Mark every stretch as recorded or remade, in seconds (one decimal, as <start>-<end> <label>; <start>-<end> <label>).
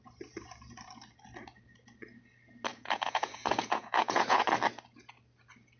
0.0-2.7 recorded; 2.7-4.4 remade; 4.4-5.8 recorded